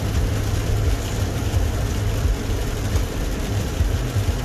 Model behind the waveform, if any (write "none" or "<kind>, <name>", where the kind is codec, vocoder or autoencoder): none